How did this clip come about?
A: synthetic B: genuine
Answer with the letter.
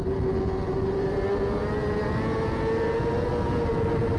B